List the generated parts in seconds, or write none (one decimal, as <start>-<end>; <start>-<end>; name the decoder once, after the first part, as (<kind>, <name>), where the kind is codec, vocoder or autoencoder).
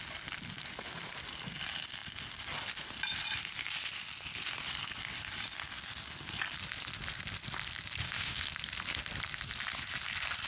8.0-8.5 (autoencoder, DAC-VAE)